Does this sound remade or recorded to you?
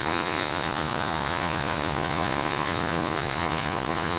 remade